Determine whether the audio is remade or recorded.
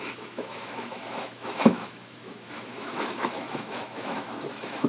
remade